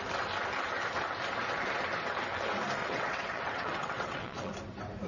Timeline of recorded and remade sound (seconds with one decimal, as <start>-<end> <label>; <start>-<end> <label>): 0.0-2.8 recorded; 2.8-4.5 remade; 4.5-5.1 recorded